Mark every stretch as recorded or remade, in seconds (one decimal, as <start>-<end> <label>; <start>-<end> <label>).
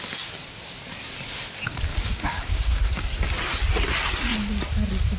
0.0-1.9 recorded; 1.9-2.8 remade; 2.8-5.2 recorded